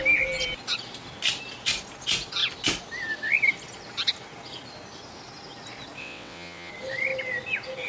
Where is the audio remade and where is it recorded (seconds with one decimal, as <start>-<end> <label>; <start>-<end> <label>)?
0.0-6.0 recorded; 6.0-6.7 remade; 6.7-7.9 recorded